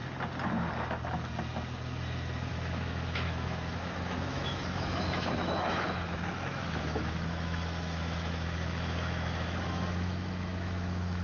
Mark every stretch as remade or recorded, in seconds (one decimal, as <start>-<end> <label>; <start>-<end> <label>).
0.0-2.5 recorded; 2.5-11.2 remade